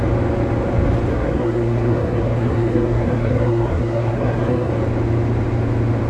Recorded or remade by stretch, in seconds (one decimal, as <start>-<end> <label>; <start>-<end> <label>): 0.0-1.1 recorded; 1.1-4.7 remade; 4.7-6.1 recorded